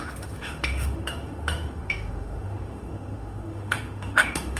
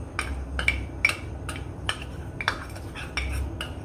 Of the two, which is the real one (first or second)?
second